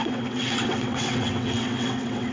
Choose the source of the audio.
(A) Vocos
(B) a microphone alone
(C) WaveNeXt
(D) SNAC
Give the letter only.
C